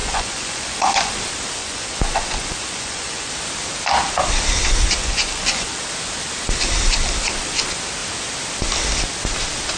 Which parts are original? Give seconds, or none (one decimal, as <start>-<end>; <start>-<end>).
1.1-1.6; 3.3-5.0; 5.8-9.8